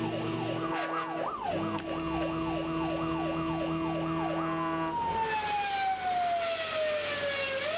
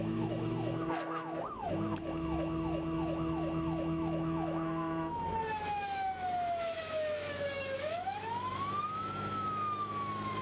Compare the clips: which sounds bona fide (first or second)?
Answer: first